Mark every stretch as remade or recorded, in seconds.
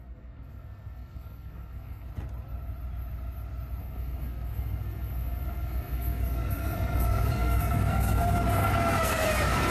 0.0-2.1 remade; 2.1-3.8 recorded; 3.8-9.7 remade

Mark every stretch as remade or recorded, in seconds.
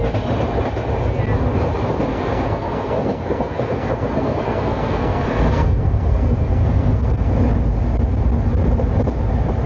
0.0-2.1 recorded; 2.1-7.3 remade; 7.3-9.7 recorded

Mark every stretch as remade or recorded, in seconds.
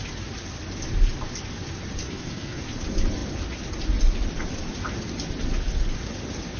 0.0-2.0 recorded; 2.0-2.6 remade; 2.6-6.6 recorded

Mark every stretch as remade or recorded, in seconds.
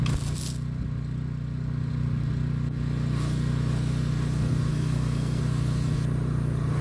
0.0-4.7 recorded; 4.7-5.4 remade; 5.4-6.8 recorded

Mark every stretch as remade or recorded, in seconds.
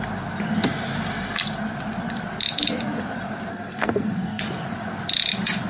0.0-3.5 recorded; 3.5-4.4 remade; 4.4-5.7 recorded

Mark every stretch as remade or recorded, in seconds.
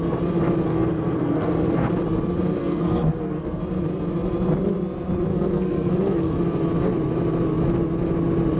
0.0-0.7 recorded; 0.7-1.9 remade; 1.9-2.6 recorded; 2.6-3.6 remade; 3.6-5.3 recorded; 5.3-6.3 remade; 6.3-8.6 recorded